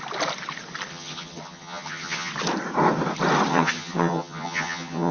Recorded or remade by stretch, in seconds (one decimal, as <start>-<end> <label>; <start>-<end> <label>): 0.0-0.9 recorded; 0.9-2.3 remade; 2.3-3.5 recorded; 3.5-5.1 remade